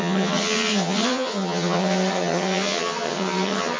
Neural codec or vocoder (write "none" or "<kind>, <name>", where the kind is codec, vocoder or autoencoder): vocoder, HiFi-GAN